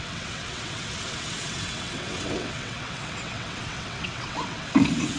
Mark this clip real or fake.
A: fake